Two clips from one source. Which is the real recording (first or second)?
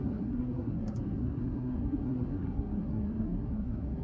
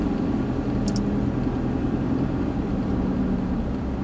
second